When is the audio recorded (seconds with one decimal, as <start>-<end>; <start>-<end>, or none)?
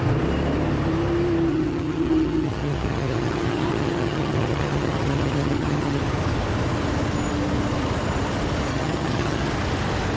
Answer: 0.0-1.5; 6.0-8.7; 9.5-10.2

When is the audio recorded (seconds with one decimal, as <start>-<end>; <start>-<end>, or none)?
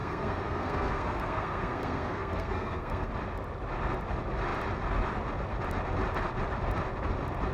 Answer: 3.1-7.5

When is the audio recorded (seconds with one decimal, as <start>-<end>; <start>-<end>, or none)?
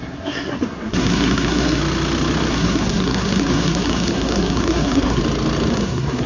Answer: 1.8-2.5; 5.2-5.7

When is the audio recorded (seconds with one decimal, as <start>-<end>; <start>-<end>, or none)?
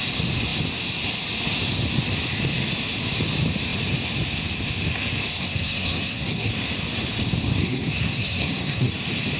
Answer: 0.0-5.3; 6.5-7.6; 8.9-9.4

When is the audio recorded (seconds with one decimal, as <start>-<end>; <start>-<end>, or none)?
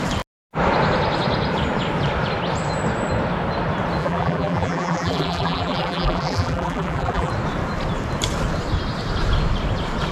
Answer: 0.0-4.0; 7.3-10.1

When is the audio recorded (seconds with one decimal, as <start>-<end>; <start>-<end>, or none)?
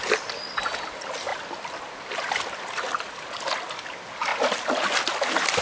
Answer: 0.0-5.6